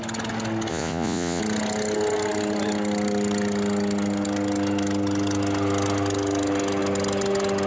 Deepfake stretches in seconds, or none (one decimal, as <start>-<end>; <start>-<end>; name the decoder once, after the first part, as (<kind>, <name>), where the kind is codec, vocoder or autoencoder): 0.7-1.4 (vocoder, Vocos)